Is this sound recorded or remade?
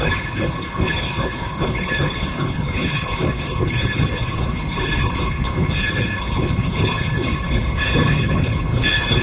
remade